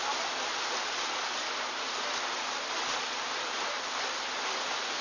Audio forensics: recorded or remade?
recorded